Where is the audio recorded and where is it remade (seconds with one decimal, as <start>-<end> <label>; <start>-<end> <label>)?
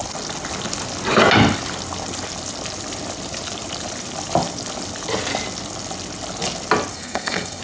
0.0-6.9 recorded; 6.9-7.6 remade